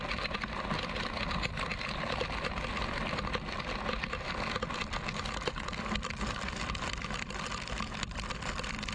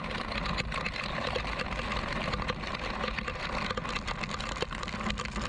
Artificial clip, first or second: first